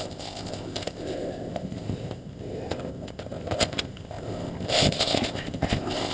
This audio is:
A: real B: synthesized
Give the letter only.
B